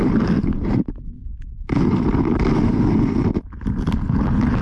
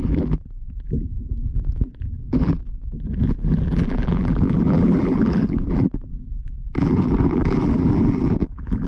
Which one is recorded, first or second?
first